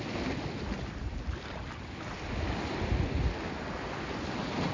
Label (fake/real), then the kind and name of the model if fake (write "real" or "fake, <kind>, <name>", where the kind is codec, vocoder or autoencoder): real